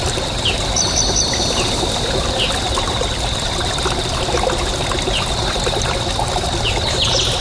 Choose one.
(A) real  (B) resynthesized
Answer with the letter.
A